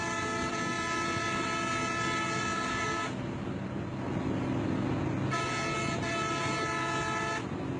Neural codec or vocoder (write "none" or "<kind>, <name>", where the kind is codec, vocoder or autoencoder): none